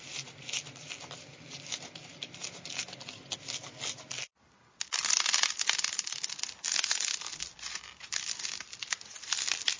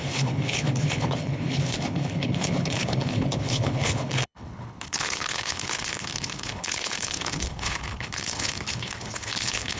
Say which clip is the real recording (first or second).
first